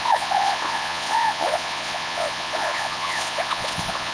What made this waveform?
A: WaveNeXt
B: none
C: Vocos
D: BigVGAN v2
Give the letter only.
C